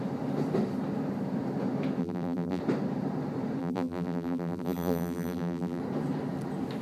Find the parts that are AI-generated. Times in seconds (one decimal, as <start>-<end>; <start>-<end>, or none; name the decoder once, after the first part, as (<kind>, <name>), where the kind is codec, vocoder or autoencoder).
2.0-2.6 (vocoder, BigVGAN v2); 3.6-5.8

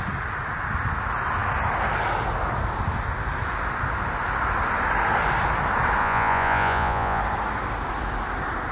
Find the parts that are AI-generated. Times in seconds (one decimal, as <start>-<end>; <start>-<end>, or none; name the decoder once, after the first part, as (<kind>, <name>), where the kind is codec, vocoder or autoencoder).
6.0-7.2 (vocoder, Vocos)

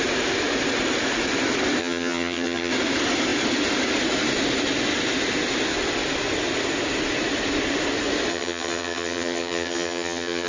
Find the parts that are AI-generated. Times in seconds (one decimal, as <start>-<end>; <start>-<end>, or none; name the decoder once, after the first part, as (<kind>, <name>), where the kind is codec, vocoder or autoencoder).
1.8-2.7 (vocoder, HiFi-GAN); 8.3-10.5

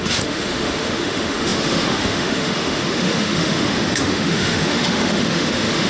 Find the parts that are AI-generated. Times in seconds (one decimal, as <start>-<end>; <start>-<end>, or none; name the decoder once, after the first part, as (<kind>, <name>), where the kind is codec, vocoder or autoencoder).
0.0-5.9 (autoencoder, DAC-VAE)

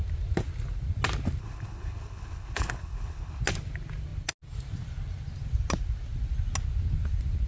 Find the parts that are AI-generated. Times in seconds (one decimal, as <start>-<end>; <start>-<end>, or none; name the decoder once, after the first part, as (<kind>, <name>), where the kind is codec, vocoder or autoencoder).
1.4-3.4 (codec, HILCodec)

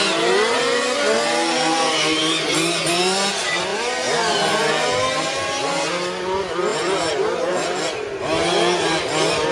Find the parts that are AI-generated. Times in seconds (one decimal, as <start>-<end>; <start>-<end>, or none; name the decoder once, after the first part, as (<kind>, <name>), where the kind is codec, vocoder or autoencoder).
6.7-7.5 (vocoder, BigVGAN v2)